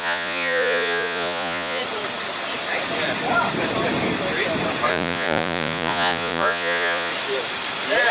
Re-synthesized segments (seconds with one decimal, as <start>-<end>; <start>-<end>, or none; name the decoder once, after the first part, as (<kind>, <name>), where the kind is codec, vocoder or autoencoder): 0.0-1.8 (vocoder, Vocos); 4.9-7.1